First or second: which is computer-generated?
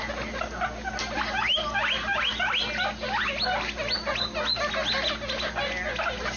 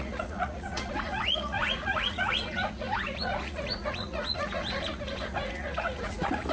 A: second